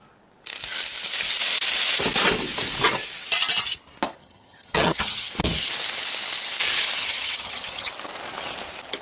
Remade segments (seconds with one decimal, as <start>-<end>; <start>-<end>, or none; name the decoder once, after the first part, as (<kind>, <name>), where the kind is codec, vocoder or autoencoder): 4.2-5.3 (vocoder, HiFi-GAN); 7.0-7.9